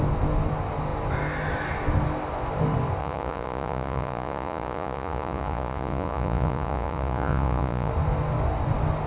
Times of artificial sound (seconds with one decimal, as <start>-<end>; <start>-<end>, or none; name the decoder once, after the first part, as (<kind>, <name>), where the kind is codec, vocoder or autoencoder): 3.0-7.9 (vocoder, Vocos)